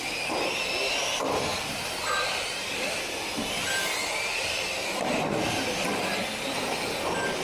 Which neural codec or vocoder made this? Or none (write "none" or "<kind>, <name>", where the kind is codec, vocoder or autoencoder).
none